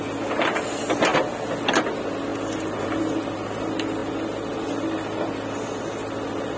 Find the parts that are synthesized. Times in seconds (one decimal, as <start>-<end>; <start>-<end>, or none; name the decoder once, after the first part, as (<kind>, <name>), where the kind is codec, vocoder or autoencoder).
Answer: none